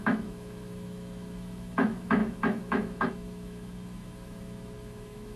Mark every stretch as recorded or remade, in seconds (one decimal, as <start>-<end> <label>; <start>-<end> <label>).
0.0-5.4 remade